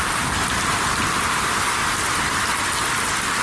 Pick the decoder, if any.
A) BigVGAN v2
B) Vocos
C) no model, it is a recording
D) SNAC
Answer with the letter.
C